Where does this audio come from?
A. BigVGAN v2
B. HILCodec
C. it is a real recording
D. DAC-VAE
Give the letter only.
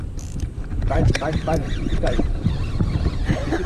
C